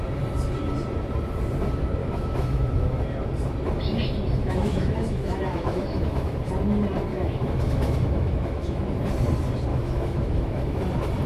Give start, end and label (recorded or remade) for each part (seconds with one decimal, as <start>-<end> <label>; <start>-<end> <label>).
0.0-2.0 recorded; 2.0-3.0 remade; 3.0-4.4 recorded; 4.4-6.5 remade; 6.5-7.1 recorded; 7.1-8.8 remade; 8.8-9.7 recorded; 9.7-10.8 remade; 10.8-11.3 recorded